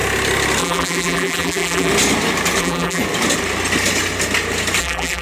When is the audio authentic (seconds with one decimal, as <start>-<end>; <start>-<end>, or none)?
0.0-0.6; 1.9-2.6; 3.0-4.8